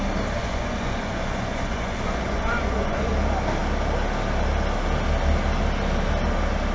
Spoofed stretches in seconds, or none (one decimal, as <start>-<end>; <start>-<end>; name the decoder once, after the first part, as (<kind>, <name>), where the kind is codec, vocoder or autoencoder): 0.4-3.1 (vocoder, Vocos)